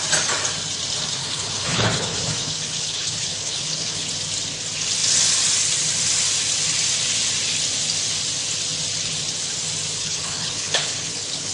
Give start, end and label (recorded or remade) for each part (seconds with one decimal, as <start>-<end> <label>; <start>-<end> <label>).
0.0-1.2 recorded; 1.2-4.1 remade; 4.1-10.0 recorded; 10.0-11.5 remade